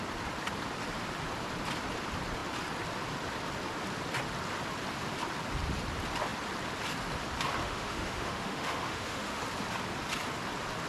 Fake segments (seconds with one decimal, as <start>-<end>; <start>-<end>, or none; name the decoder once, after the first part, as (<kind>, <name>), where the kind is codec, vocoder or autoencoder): 7.6-9.4 (autoencoder, DAC-VAE)